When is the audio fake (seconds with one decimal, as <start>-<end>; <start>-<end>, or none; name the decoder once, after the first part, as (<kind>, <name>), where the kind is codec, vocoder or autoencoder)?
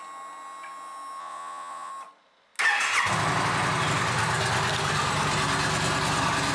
1.2-1.9 (vocoder, Vocos)